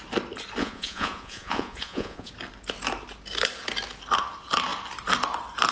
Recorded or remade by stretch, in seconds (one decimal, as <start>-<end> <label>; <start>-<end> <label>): 0.0-0.6 recorded; 0.6-2.3 remade; 2.3-5.7 recorded